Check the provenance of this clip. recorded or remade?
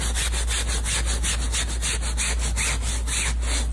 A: recorded